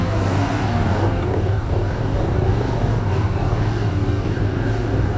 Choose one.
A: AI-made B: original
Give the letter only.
A